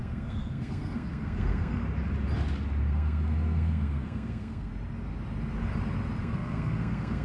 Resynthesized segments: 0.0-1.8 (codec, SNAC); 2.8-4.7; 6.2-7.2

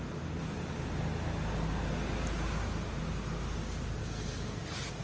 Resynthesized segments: 4.0-4.6 (codec, SNAC)

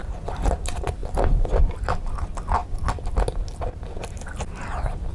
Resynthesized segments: none

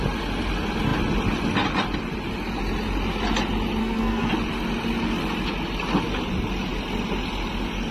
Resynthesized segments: 3.8-4.3 (codec, SNAC)

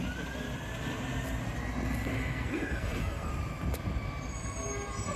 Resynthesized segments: 2.1-3.3 (codec, SNAC)

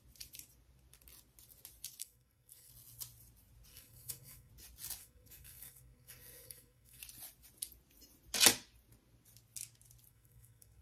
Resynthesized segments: 2.0-2.7 (codec, SNAC); 3.7-4.5; 5.0-7.0; 10.1-10.8

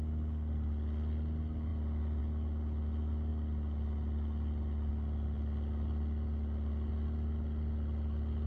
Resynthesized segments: none